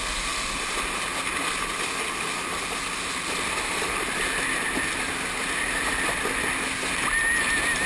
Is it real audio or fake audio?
real